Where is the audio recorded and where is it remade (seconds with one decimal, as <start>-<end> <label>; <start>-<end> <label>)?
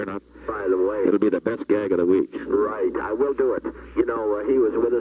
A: 0.0-0.7 recorded; 0.7-1.5 remade; 1.5-5.0 recorded